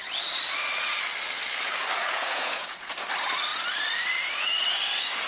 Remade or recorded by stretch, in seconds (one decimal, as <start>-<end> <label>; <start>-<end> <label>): 0.0-2.0 recorded; 2.0-2.9 remade; 2.9-5.3 recorded